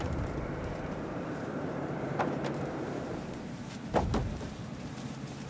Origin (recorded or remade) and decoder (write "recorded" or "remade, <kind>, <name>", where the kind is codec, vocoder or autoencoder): remade, vocoder, BigVGAN v2